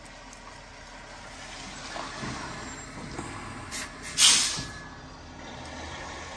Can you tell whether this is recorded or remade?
recorded